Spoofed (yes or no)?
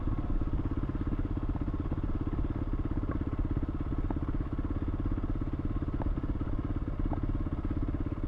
no